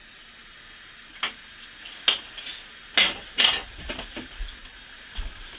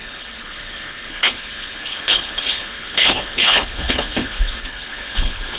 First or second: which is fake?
second